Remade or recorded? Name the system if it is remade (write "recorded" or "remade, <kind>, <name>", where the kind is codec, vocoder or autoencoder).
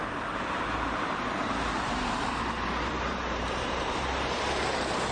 remade, vocoder, BigVGAN v2